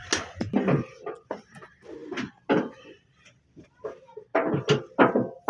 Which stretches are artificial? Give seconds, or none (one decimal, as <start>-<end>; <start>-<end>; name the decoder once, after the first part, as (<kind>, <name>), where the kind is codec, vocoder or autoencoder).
none